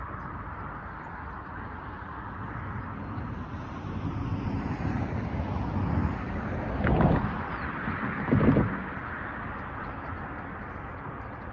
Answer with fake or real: real